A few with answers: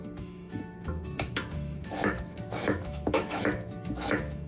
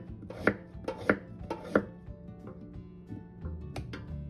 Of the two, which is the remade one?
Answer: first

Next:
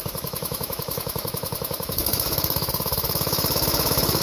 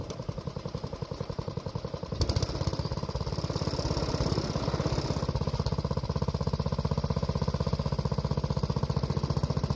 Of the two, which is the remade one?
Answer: first